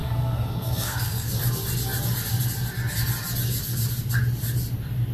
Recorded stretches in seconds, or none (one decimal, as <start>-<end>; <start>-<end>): 1.3-5.1

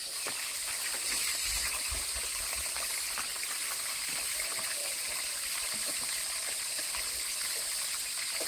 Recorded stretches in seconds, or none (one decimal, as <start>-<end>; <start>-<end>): 0.0-8.5

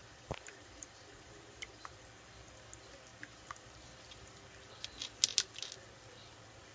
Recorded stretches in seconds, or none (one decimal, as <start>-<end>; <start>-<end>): 2.0-3.1; 4.4-6.7

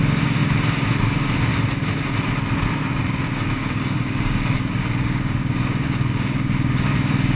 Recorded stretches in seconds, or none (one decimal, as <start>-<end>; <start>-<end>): 0.4-1.0; 1.5-3.3

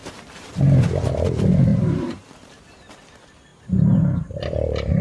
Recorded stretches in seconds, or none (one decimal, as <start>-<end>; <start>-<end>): 0.6-1.7; 3.0-3.5; 4.0-5.0

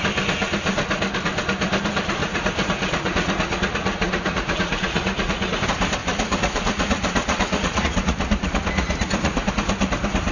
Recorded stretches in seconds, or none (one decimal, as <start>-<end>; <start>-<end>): 0.0-2.2; 5.6-6.0; 9.5-10.3

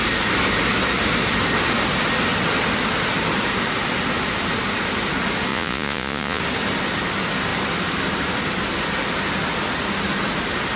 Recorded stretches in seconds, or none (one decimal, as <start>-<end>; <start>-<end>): 0.0-5.5; 6.4-10.8